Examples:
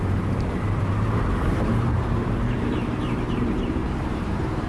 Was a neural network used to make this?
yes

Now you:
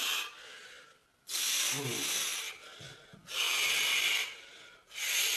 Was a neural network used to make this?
yes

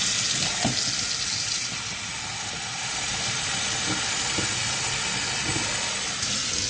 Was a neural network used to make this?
no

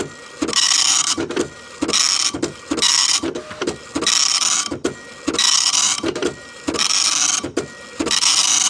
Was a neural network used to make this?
no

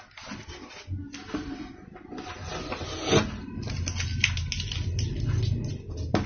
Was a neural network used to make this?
no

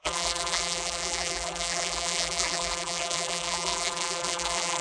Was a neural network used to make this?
yes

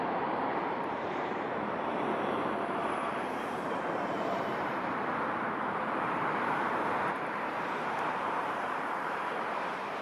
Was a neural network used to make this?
yes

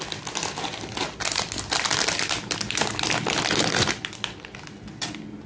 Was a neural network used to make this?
no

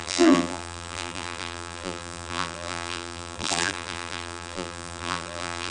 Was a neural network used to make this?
yes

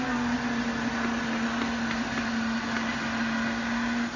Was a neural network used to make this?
no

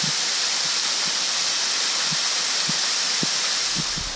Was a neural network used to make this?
yes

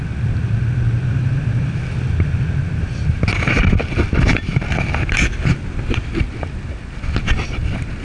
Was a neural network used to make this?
no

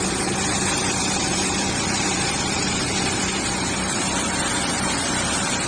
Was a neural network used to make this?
yes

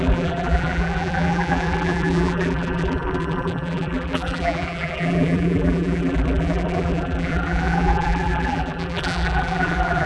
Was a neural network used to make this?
yes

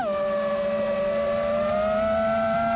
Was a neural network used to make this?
no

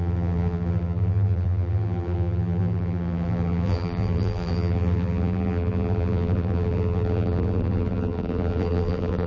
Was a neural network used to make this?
yes